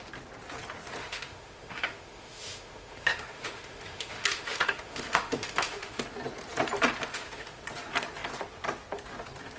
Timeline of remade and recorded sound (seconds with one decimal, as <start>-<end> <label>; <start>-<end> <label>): 0.0-1.0 recorded; 1.0-6.0 remade; 6.0-7.1 recorded; 7.1-7.6 remade; 7.6-9.6 recorded